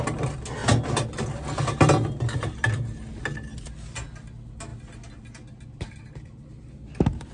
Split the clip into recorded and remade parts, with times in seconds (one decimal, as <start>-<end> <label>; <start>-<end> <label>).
0.0-7.3 recorded